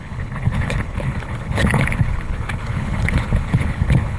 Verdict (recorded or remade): remade